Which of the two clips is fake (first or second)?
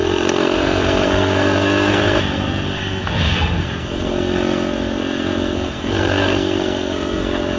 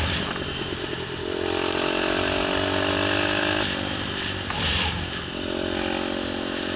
first